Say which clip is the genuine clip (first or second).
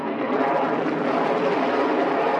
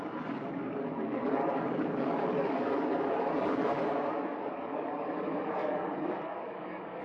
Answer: first